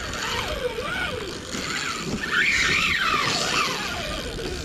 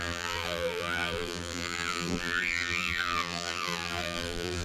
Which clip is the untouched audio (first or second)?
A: first